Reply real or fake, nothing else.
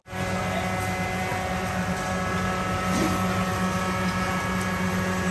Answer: real